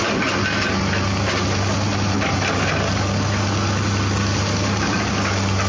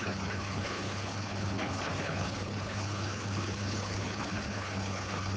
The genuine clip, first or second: first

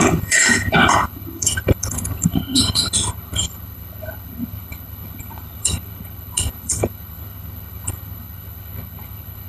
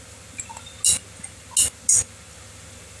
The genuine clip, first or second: second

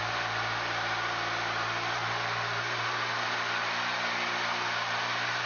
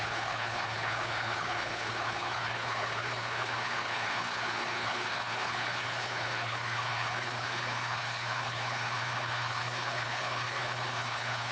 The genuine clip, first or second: first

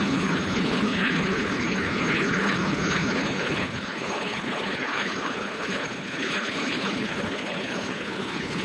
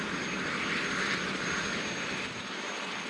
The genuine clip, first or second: second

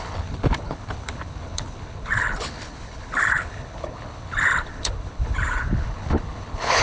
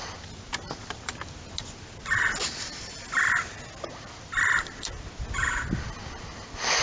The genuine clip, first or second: second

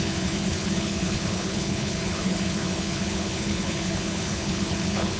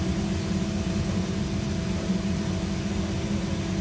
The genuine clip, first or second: second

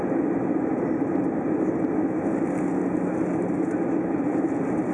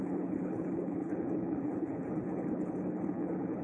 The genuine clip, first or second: first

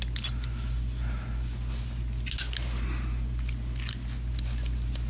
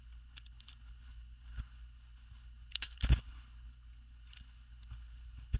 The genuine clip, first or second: first